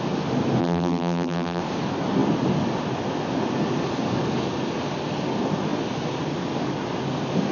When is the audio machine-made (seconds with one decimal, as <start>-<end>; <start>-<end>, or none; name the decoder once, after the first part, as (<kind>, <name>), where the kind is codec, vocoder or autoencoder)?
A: 0.6-1.6 (vocoder, BigVGAN v2)